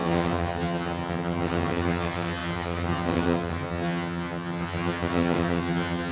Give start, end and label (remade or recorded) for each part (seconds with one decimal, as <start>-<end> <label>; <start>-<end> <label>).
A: 0.0-6.1 remade